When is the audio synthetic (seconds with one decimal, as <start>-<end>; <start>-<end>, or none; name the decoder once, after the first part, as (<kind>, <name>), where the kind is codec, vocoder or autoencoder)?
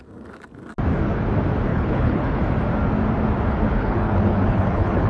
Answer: 1.7-2.4 (codec, HILCodec); 3.7-5.1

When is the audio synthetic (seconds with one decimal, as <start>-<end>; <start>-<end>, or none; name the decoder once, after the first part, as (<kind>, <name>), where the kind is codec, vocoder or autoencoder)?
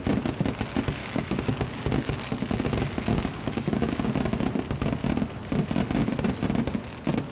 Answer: 1.0-2.2 (codec, DAC); 3.1-4.1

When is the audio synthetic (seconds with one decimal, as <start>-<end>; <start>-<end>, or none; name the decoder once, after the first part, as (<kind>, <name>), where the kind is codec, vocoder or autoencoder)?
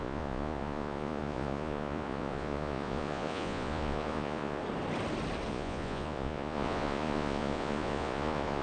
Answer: 0.0-4.6 (vocoder, Vocos); 5.5-8.6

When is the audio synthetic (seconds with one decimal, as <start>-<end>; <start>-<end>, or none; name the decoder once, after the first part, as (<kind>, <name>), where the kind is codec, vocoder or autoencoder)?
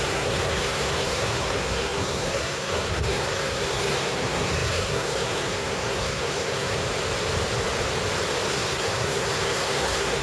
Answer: 0.0-6.8 (codec, SNAC); 8.5-10.2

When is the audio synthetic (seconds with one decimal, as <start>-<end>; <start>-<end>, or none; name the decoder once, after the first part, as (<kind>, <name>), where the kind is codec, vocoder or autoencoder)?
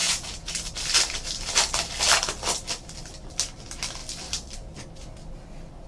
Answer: 0.0-0.5 (vocoder, Vocos)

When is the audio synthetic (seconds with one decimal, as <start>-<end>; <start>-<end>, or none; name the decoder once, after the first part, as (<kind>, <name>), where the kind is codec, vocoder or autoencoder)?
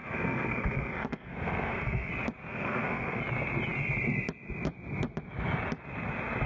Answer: 0.0-2.1 (codec, SNAC); 2.5-3.2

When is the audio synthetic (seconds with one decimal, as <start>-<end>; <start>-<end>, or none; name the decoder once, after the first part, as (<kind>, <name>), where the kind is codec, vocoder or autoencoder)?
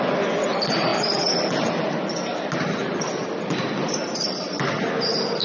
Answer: none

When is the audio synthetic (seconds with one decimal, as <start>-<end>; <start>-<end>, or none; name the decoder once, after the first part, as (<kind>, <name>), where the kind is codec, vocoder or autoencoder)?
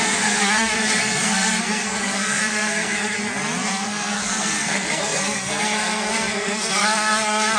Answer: 0.0-3.2 (codec, SNAC); 3.7-7.6